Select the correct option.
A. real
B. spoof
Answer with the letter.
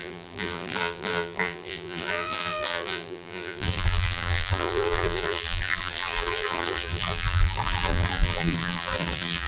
B